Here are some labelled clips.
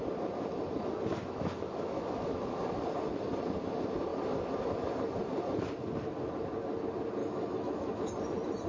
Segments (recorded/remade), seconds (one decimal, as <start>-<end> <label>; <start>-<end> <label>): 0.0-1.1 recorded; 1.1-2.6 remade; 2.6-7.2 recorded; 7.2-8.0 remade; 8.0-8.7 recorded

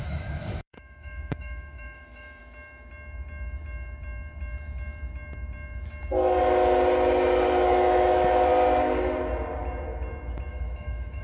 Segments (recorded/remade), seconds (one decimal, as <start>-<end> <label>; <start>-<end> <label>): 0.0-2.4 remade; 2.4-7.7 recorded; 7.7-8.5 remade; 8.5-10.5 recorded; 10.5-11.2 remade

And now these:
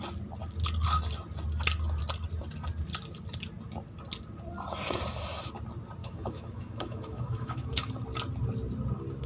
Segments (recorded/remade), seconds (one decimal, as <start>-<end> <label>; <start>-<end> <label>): 0.0-6.0 recorded; 6.0-7.9 remade; 7.9-9.3 recorded